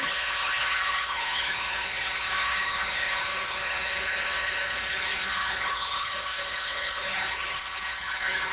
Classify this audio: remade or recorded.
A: remade